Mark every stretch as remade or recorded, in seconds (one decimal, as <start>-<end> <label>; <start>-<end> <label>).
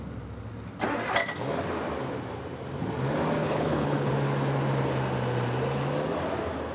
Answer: 0.0-3.4 recorded; 3.4-4.1 remade; 4.1-6.7 recorded